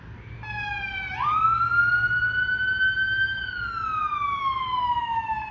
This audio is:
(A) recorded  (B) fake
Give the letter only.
A